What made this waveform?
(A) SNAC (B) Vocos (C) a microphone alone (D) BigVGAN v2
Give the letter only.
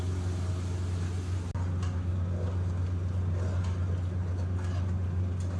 C